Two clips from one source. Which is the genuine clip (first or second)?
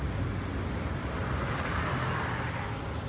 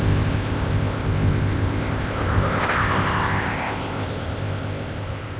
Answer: first